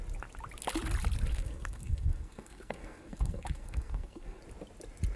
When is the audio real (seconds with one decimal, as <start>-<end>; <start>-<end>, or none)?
0.0-1.3; 4.4-5.2